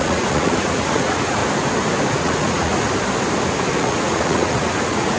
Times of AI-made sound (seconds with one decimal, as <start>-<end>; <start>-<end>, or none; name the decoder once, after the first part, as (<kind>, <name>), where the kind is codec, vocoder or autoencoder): 0.0-1.4 (vocoder, Vocos); 2.2-2.7; 3.7-5.2